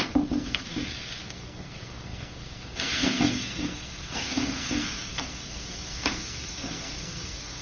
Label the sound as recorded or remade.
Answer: remade